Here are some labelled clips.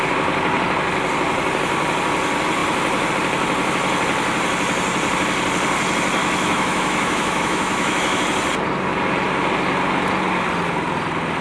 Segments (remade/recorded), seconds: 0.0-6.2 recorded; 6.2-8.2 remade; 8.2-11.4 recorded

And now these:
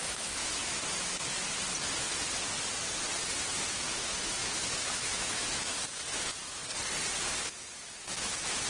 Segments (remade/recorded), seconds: 0.0-0.6 remade; 0.6-3.7 recorded; 3.7-6.6 remade; 6.6-7.4 recorded; 7.4-8.7 remade

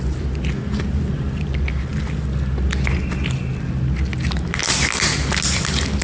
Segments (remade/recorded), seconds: 0.0-6.0 recorded

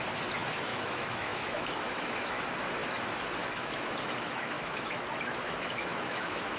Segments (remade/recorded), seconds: 0.0-0.7 recorded; 0.7-2.4 remade; 2.4-3.4 recorded; 3.4-6.6 remade

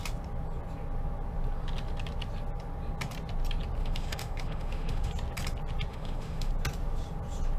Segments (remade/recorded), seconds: 0.0-3.8 recorded; 3.8-5.1 remade; 5.1-5.9 recorded; 5.9-6.5 remade; 6.5-7.6 recorded

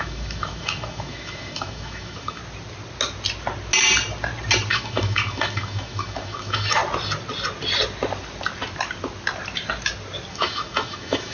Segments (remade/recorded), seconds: 0.0-2.4 remade; 2.4-4.7 recorded; 4.7-6.8 remade; 6.8-10.3 recorded; 10.3-11.3 remade

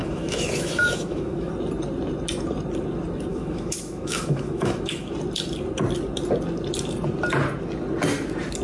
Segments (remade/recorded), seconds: 0.0-1.5 remade; 1.5-3.3 recorded; 3.3-5.1 remade; 5.1-8.6 recorded

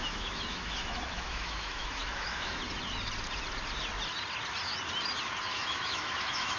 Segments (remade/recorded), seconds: 0.0-2.6 remade; 2.6-5.5 recorded; 5.5-6.6 remade